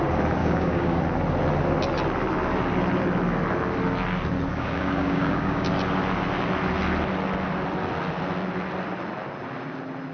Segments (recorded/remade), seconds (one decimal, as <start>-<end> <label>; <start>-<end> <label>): 0.0-0.4 recorded; 0.4-1.0 remade; 1.0-4.5 recorded; 4.5-5.7 remade; 5.7-10.1 recorded